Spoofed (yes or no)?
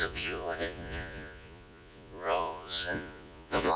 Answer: yes